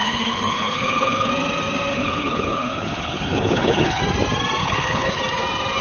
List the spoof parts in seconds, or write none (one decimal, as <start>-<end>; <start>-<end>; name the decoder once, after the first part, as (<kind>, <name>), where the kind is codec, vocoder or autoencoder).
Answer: 0.0-1.3 (codec, HILCodec); 1.9-4.0; 4.6-5.2